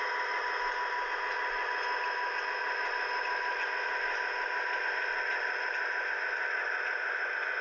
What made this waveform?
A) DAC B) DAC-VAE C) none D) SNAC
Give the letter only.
C